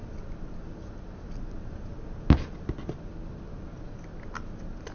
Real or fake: real